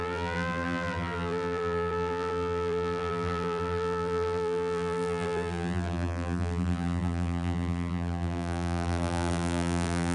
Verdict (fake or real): fake